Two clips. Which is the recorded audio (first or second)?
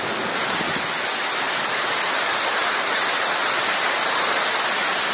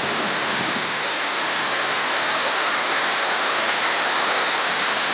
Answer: first